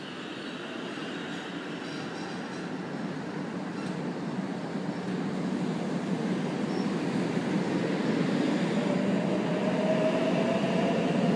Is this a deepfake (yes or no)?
no